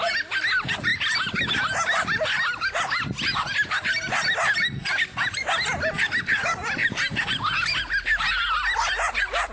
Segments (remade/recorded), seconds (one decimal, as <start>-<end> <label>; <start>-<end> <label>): 0.0-9.5 recorded